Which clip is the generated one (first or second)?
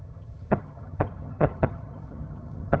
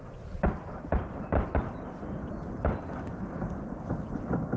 first